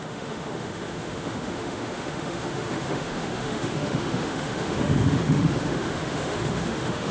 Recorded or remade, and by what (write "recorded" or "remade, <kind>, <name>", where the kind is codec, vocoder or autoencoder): remade, autoencoder, DAC-VAE